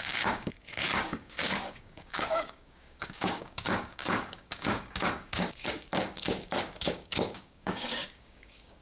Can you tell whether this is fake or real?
fake